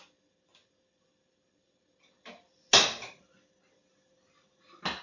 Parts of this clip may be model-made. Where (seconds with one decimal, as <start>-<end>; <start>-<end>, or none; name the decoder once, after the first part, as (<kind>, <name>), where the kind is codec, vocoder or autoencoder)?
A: none